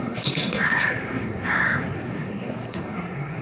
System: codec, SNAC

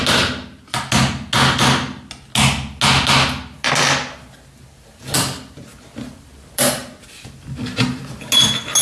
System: none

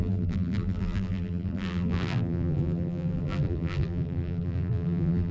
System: vocoder, BigVGAN v2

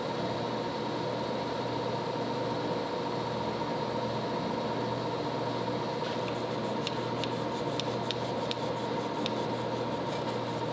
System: none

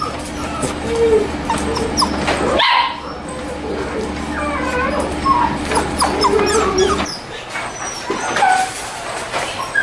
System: none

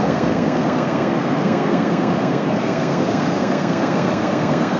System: codec, SNAC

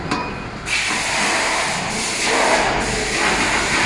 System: none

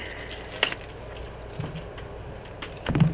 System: none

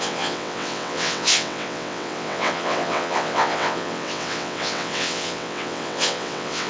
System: vocoder, WaveNeXt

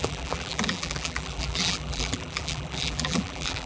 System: vocoder, BigVGAN v2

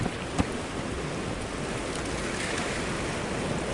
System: none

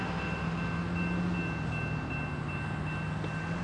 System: none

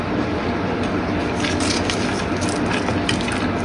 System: none